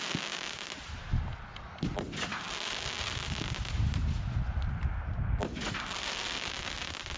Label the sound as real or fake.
real